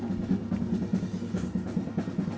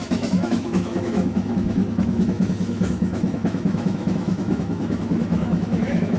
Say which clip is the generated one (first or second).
second